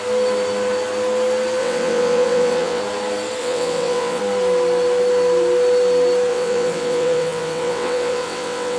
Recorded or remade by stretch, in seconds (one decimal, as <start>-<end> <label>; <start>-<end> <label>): 0.0-1.6 recorded; 1.6-2.8 remade; 2.8-3.4 recorded; 3.4-4.2 remade; 4.2-6.3 recorded; 6.3-8.8 remade